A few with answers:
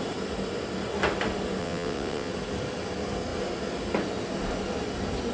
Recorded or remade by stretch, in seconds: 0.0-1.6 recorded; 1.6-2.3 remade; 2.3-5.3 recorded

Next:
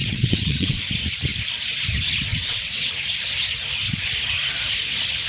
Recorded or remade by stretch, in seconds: 0.0-0.8 remade; 0.8-2.3 recorded; 2.3-2.9 remade; 2.9-5.3 recorded

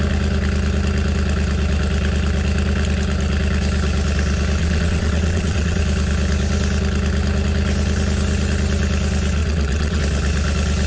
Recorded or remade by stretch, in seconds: 0.0-4.6 recorded; 4.6-5.8 remade; 5.8-9.4 recorded; 9.4-10.0 remade; 10.0-10.9 recorded

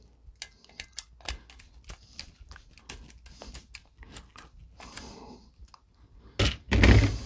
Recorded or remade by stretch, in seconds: 0.0-7.3 recorded

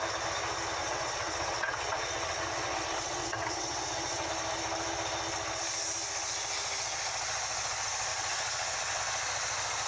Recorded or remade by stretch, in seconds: 0.0-0.8 recorded; 0.8-4.3 remade; 4.3-8.1 recorded; 8.1-9.0 remade; 9.0-9.9 recorded

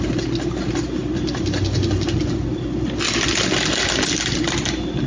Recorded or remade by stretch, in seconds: 0.0-5.1 recorded